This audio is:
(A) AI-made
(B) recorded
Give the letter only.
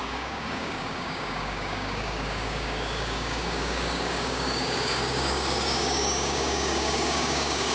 A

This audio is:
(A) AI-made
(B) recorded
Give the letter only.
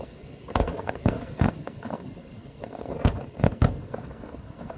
A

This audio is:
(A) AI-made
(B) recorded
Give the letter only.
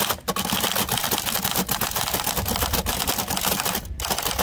B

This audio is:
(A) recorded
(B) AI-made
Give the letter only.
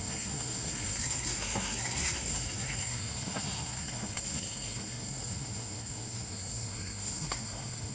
B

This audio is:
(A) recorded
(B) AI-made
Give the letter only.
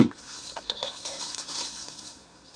B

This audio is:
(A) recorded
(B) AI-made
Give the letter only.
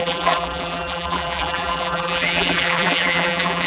B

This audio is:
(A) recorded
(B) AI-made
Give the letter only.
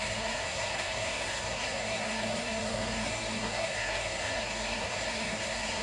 B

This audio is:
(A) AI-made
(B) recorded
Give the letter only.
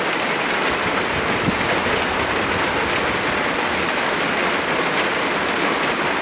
B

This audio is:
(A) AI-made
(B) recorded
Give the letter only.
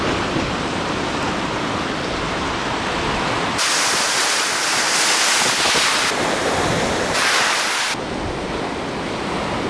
B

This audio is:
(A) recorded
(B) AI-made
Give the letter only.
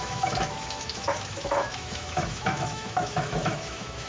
B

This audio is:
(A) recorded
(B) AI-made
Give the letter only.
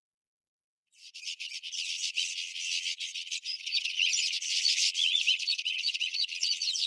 B